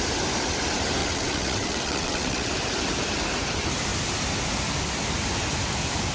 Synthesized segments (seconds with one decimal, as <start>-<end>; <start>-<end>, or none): 1.0-2.5